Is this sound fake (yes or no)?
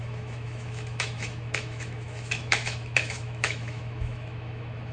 yes